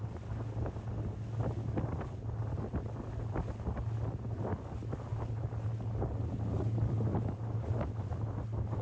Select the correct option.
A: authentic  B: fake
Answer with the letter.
A